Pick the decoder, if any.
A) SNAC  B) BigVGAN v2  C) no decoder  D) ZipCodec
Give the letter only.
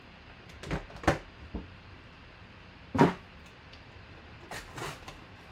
C